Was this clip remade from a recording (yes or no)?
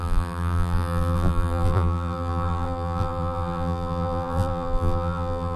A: yes